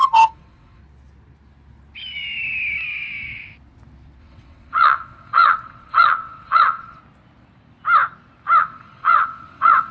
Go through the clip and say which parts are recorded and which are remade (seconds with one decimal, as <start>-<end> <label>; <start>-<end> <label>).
0.0-0.8 remade; 0.8-4.2 recorded; 4.2-7.0 remade; 7.0-8.6 recorded; 8.6-9.9 remade